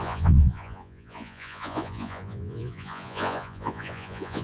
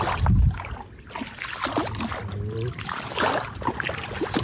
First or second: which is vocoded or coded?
first